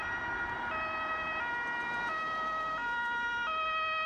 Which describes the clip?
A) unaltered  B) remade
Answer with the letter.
A